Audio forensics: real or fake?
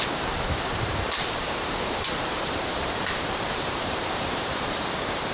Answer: fake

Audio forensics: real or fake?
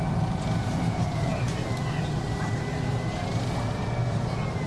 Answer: real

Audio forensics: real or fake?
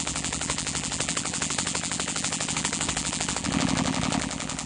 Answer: fake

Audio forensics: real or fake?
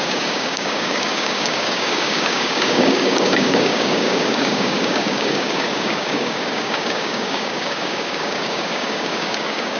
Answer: fake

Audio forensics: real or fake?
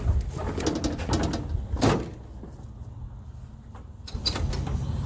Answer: real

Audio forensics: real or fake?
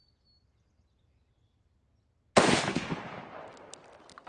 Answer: real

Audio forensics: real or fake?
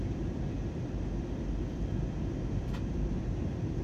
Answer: fake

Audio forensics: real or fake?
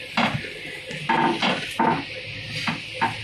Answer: real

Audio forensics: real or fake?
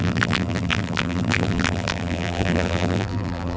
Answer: fake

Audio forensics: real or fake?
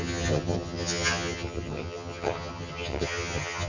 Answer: fake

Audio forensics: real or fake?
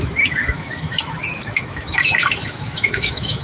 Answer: fake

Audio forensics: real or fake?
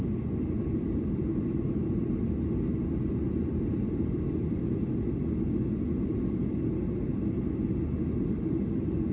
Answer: real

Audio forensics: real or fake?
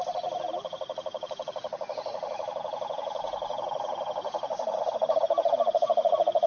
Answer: fake